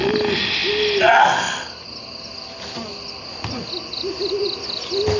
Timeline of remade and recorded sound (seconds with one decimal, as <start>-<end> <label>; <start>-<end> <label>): 0.0-5.2 recorded